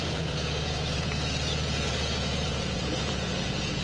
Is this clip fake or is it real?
fake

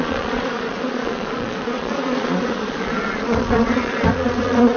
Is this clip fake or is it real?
fake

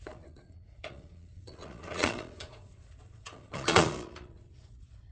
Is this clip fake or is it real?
fake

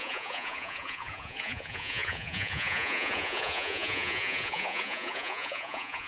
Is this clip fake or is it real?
fake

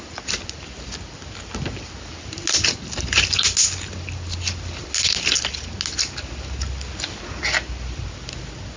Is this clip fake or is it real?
real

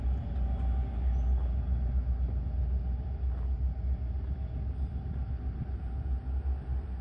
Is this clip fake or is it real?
real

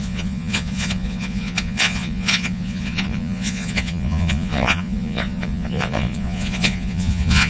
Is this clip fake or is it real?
fake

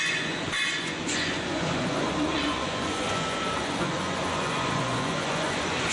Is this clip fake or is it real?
fake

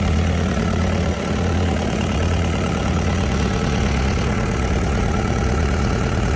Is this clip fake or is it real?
fake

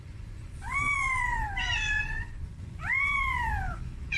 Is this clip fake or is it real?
fake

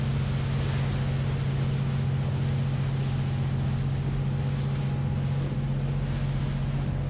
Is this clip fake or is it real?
real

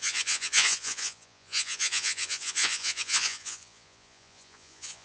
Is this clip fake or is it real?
fake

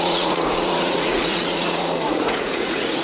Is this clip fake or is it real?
fake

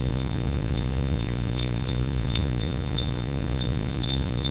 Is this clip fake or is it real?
fake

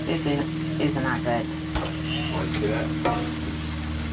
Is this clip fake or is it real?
real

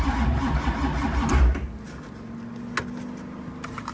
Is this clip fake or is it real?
real